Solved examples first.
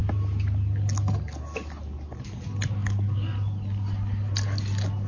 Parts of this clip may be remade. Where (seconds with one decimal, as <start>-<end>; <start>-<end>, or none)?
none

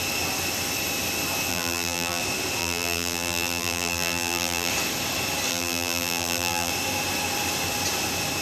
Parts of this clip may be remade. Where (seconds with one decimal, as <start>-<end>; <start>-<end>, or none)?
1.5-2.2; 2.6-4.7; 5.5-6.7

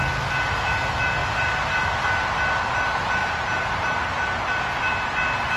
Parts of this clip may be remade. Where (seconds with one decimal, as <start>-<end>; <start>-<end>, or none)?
none

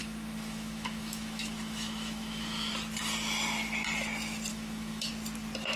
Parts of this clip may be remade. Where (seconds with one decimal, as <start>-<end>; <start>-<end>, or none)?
0.0-2.7; 4.5-5.1

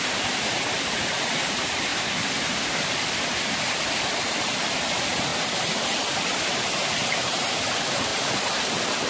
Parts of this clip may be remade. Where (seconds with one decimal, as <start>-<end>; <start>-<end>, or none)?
none